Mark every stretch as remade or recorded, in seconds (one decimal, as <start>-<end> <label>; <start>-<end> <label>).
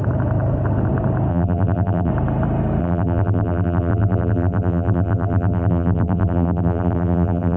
0.0-1.3 recorded; 1.3-2.1 remade; 2.1-2.8 recorded; 2.8-7.6 remade